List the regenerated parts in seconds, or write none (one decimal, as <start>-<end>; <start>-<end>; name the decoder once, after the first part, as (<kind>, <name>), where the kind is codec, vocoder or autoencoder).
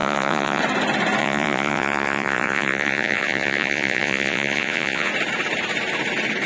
0.0-0.6 (vocoder, Vocos); 1.2-5.1